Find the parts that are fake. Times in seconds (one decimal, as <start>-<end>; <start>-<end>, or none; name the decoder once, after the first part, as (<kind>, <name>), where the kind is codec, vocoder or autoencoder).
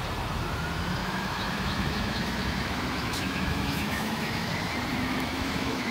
1.0-4.5 (autoencoder, DAC-VAE); 4.9-5.9